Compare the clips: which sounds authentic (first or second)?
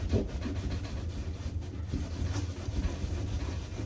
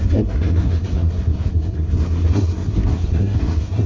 first